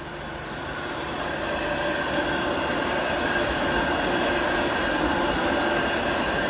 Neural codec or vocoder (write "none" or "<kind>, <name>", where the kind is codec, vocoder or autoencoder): none